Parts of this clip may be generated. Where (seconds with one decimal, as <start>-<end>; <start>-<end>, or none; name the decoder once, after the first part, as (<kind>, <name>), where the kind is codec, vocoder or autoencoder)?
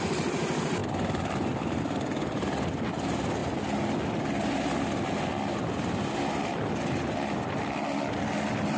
none